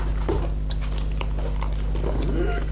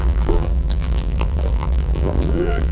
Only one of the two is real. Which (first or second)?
first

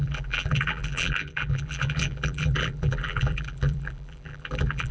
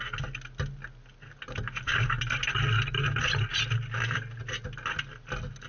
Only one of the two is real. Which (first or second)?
second